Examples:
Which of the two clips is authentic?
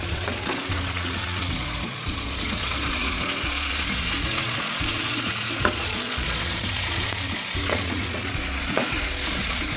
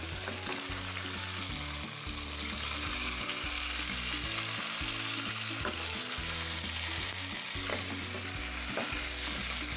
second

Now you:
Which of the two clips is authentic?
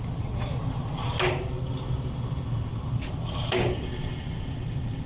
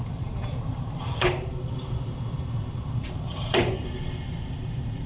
first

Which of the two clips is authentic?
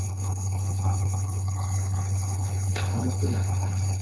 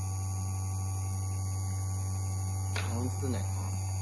second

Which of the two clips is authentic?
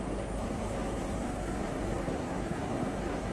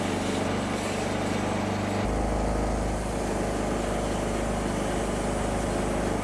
second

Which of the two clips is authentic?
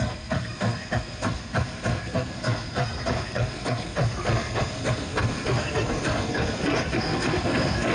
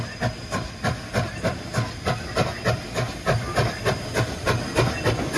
second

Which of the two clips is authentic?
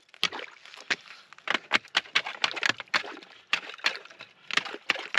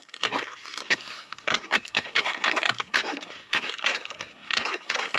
first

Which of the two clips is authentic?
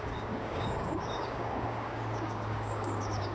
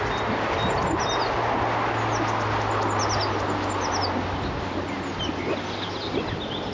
second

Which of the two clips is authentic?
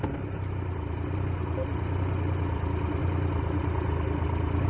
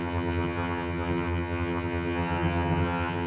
first